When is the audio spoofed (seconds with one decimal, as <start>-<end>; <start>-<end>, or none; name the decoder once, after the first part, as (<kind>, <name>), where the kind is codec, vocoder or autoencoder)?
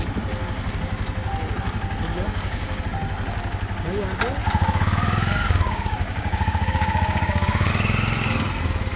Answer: 2.1-2.8 (codec, DAC); 4.4-7.7